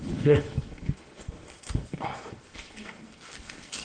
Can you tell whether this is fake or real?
fake